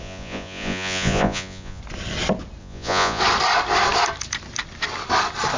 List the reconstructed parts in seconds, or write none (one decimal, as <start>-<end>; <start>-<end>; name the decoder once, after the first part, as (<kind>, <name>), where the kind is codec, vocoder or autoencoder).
0.0-1.8 (vocoder, Vocos); 2.6-3.2